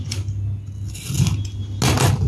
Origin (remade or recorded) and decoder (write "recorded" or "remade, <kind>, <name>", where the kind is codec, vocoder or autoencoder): recorded